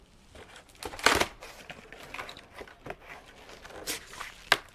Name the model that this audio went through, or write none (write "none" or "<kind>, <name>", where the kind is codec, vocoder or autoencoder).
none